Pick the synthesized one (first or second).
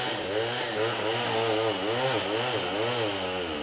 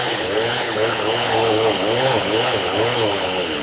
second